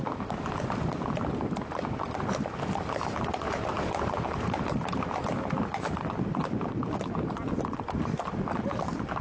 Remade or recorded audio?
recorded